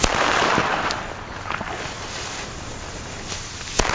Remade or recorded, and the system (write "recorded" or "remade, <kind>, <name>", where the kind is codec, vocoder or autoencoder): recorded